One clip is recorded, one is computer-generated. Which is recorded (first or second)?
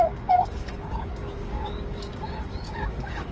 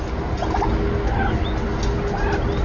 second